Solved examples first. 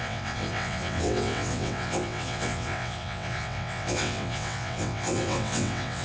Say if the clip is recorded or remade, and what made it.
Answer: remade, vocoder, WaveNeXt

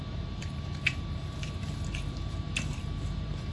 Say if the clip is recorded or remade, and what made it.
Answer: remade, vocoder, BigVGAN v2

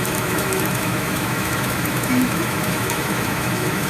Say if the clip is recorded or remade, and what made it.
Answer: remade, autoencoder, DAC-VAE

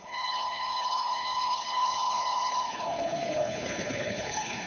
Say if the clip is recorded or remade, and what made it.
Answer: remade, codec, HILCodec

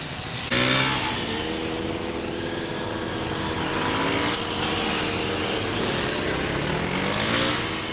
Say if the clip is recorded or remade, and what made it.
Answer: recorded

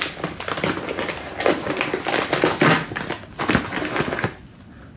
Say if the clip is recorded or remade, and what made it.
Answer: recorded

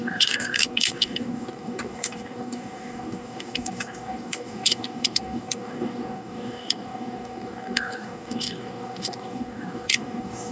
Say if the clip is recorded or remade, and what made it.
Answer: remade, codec, DAC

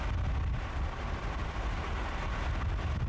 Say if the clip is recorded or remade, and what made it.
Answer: recorded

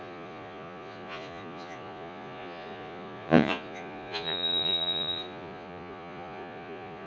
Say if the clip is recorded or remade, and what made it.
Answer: remade, vocoder, Vocos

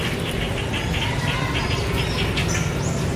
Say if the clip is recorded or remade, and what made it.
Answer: recorded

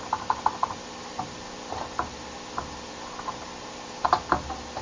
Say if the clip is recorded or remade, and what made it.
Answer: recorded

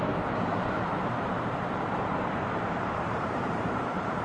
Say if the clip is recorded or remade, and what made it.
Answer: remade, vocoder, BigVGAN v2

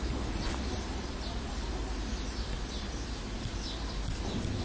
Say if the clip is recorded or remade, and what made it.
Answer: recorded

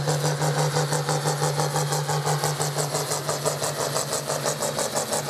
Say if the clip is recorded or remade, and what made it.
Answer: recorded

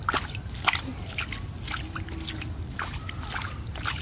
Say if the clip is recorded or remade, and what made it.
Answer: recorded